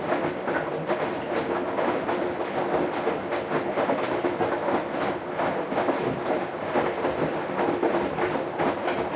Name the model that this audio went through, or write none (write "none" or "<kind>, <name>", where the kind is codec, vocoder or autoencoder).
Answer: none